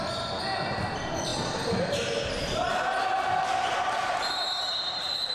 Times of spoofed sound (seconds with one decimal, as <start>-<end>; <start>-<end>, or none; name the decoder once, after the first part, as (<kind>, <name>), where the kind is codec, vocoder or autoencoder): none